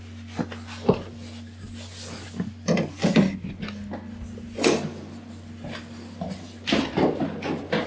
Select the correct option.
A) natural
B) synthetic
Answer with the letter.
A